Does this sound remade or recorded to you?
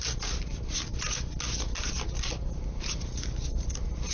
recorded